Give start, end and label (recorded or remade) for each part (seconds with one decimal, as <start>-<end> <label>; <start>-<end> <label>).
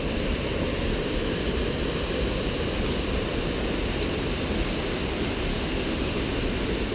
0.0-5.5 recorded; 5.5-6.2 remade; 6.2-6.9 recorded